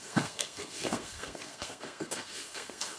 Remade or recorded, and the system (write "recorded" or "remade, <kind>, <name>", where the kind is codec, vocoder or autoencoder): remade, codec, SNAC